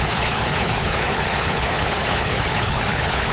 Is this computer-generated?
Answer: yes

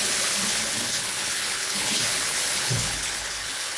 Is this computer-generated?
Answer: yes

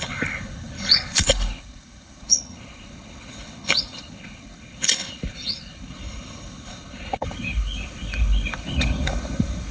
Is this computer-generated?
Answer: yes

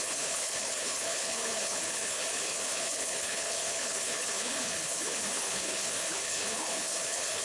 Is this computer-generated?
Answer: yes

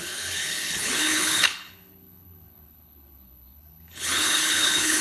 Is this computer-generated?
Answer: yes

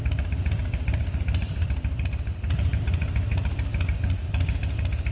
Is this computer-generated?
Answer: no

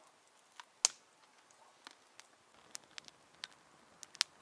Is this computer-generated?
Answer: no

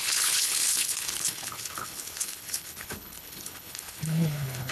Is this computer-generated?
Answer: yes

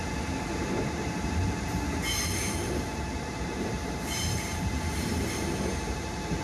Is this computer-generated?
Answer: no